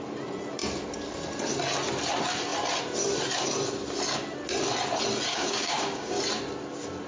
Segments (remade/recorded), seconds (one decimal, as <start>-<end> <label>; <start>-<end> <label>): 0.0-5.3 recorded; 5.3-6.2 remade; 6.2-7.1 recorded